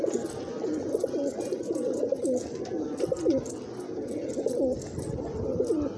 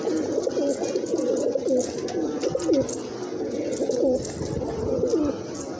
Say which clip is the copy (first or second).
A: first